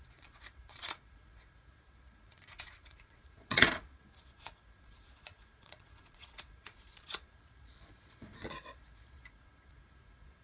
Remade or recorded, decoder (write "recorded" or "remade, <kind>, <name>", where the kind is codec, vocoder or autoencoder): remade, vocoder, Vocos